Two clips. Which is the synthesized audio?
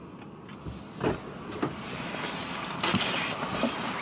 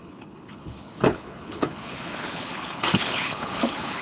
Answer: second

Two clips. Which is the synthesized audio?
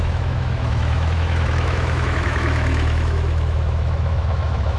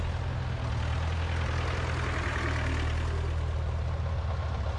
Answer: first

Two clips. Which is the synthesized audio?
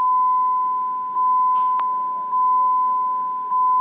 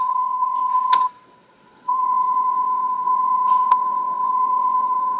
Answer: second